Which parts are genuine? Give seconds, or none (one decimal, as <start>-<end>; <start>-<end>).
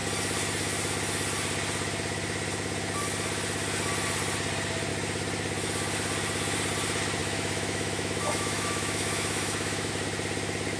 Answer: 0.0-7.2; 9.9-10.8